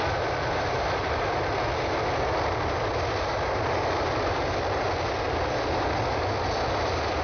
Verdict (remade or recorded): recorded